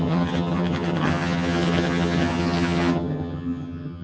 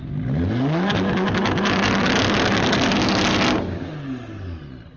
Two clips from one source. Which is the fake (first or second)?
first